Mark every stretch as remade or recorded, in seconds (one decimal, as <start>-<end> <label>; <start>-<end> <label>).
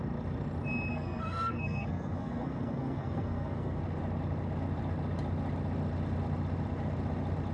0.0-0.9 recorded; 0.9-3.8 remade; 3.8-7.5 recorded